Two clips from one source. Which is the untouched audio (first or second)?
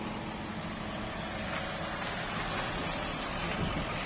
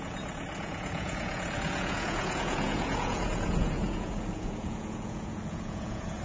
first